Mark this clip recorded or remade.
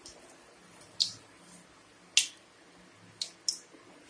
recorded